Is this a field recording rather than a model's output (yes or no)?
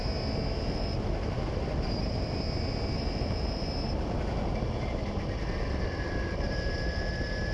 yes